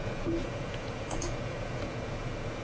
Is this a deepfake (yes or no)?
yes